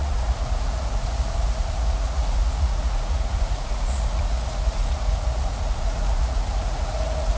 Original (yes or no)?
no